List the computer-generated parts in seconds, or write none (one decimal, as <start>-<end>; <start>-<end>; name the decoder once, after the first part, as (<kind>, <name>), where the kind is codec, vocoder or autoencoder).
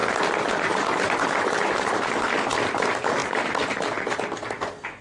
0.0-2.3 (vocoder, BigVGAN v2); 3.2-3.7